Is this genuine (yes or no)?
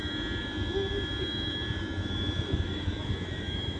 no